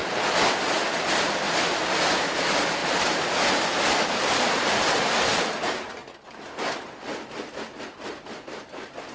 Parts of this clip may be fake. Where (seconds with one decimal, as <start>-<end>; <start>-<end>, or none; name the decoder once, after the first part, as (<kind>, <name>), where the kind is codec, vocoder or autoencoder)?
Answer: 1.3-6.0 (vocoder, BigVGAN v2); 7.5-9.1